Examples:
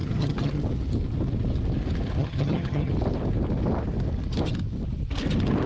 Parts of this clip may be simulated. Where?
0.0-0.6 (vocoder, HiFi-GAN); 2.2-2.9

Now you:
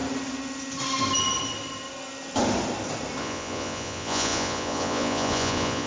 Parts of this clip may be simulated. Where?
3.2-5.9 (vocoder, Vocos)

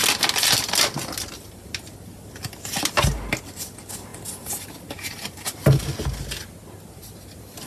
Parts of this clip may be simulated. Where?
none